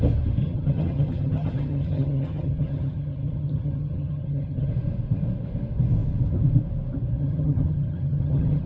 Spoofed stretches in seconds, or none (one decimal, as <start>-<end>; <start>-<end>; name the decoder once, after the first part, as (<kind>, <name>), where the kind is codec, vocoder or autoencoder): 0.4-4.7 (vocoder, HiFi-GAN); 7.2-8.7